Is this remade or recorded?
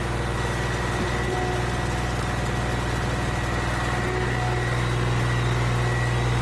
recorded